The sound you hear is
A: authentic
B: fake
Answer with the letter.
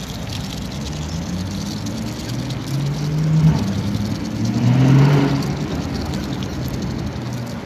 A